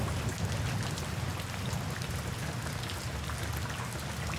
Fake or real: real